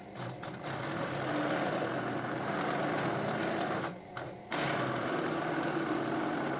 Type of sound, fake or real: real